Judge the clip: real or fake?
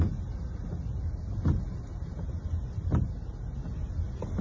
real